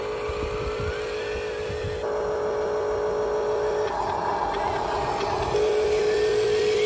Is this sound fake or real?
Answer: real